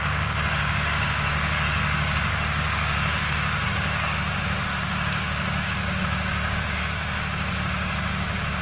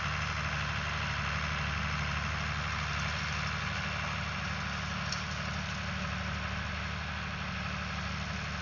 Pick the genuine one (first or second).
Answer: second